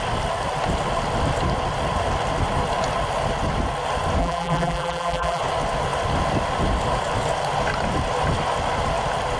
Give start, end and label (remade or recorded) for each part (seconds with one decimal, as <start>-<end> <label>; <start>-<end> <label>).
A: 0.0-4.2 recorded; 4.2-5.4 remade; 5.4-9.4 recorded